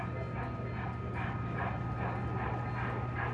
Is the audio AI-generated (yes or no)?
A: no